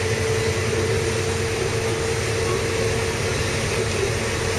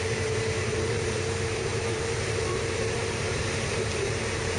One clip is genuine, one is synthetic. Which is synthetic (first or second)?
second